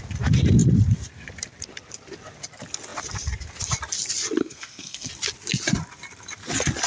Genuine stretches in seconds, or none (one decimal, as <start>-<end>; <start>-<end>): 0.0-4.4; 5.1-6.9